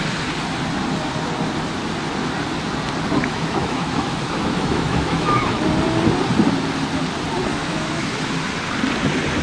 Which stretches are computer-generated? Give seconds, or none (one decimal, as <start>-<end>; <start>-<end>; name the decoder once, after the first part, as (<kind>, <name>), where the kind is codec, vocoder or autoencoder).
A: 3.2-5.6 (autoencoder, DAC-VAE); 7.5-8.1